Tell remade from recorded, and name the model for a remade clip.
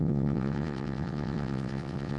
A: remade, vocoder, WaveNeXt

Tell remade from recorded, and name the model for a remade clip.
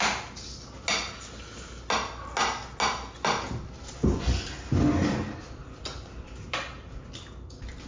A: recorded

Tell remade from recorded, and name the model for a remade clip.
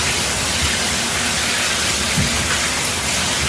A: recorded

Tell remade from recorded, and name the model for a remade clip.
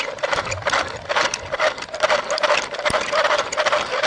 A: recorded